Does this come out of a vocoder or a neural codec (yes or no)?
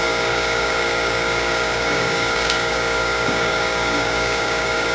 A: yes